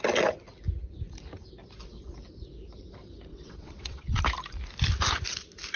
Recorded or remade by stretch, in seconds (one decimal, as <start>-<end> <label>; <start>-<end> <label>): 0.0-3.3 recorded; 3.3-4.2 remade; 4.2-5.8 recorded